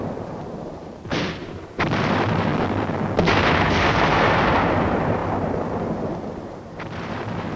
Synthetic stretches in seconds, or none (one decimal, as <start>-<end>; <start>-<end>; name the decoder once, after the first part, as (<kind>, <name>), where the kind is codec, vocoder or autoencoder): 0.0-2.5 (vocoder, BigVGAN v2); 3.2-7.6

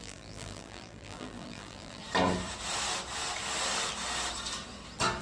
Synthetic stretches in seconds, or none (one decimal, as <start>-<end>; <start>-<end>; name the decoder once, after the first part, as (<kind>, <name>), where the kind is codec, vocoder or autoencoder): 0.0-2.0 (vocoder, BigVGAN v2)